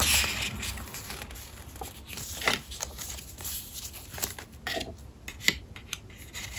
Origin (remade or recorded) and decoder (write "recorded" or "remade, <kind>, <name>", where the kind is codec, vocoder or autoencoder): recorded